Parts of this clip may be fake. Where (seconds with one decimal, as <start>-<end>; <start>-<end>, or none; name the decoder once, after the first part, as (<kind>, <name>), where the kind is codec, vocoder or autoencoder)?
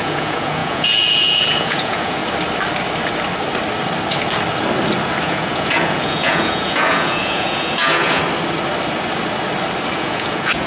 0.0-2.2 (vocoder, Vocos); 5.2-8.2; 9.9-10.7